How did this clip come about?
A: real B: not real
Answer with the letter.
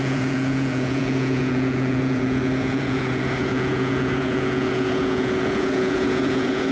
B